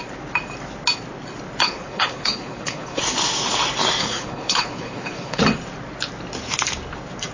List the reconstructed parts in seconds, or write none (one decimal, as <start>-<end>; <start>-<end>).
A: 1.6-3.0; 4.0-5.4